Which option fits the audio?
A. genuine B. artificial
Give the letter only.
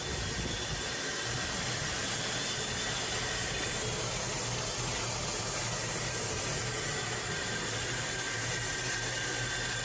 A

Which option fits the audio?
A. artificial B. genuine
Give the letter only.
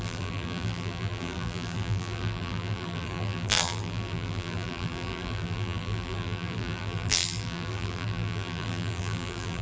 A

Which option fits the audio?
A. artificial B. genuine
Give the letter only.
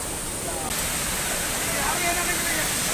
B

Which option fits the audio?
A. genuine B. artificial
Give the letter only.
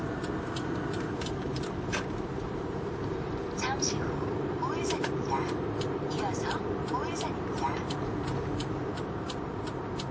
B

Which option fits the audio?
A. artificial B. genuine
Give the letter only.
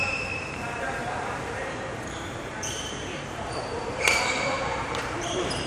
A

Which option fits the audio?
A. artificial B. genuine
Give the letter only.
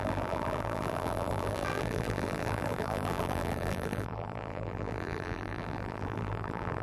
A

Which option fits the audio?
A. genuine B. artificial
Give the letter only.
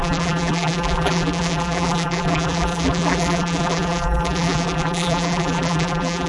B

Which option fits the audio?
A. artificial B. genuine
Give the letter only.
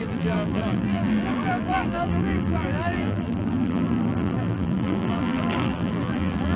A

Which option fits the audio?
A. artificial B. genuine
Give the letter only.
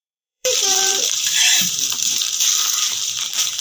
A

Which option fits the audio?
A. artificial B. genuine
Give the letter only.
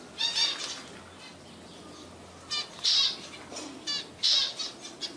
B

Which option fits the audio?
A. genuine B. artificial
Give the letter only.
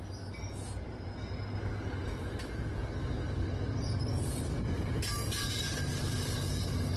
A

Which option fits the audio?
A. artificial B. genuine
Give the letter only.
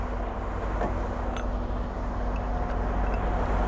B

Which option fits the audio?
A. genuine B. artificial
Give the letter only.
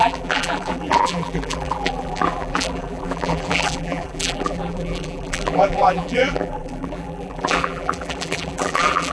B